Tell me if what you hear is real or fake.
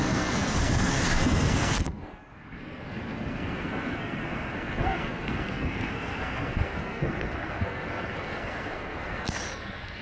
fake